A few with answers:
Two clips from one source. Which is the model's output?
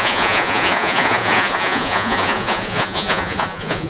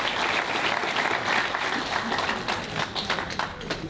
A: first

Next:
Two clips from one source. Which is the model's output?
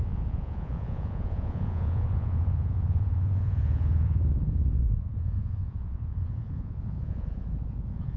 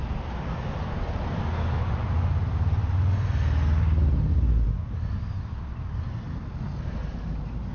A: first